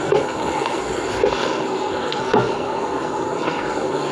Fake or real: fake